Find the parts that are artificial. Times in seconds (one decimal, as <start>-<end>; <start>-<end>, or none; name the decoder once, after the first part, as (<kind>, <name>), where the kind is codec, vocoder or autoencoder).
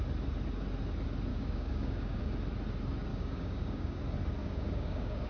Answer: 1.3-2.2 (codec, DAC); 3.1-4.0; 4.4-5.3